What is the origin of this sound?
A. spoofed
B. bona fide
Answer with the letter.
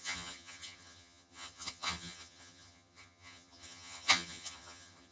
A